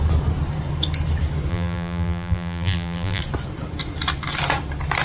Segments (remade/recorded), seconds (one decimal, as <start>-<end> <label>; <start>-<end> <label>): 0.0-1.5 recorded; 1.5-3.2 remade; 3.2-5.0 recorded